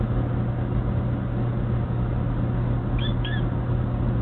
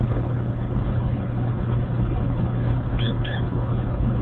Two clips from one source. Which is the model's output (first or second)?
second